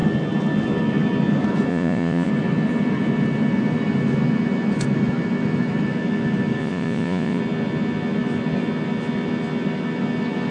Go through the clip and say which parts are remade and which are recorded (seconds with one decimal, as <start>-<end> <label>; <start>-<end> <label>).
0.0-1.7 recorded; 1.7-2.3 remade; 2.3-6.6 recorded; 6.6-7.4 remade; 7.4-10.5 recorded